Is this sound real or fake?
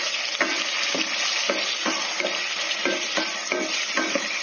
real